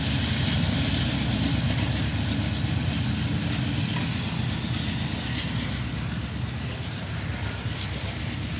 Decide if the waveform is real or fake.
real